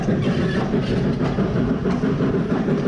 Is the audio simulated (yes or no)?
no